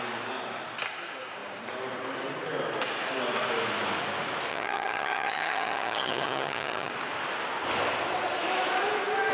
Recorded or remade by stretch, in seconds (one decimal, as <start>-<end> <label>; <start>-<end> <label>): 0.0-4.5 recorded; 4.5-6.9 remade; 6.9-9.3 recorded